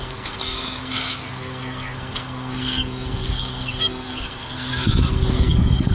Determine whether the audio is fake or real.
fake